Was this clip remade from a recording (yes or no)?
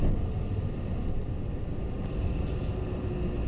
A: no